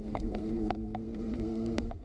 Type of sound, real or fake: fake